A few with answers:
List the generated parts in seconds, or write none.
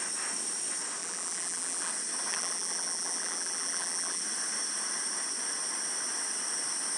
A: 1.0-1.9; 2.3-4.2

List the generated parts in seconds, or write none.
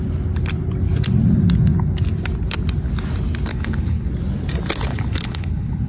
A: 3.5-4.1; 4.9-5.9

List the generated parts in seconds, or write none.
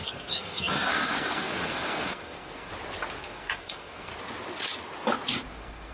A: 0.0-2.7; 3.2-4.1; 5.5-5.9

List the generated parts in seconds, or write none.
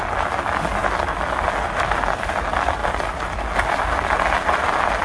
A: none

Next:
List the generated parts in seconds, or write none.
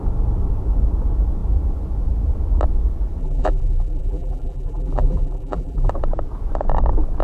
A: 3.2-5.9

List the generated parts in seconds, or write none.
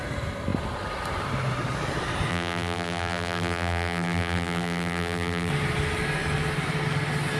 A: 2.3-5.5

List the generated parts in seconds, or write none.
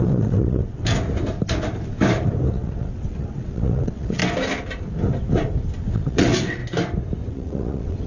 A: 0.0-0.8; 2.5-4.2; 5.9-6.6; 7.3-8.1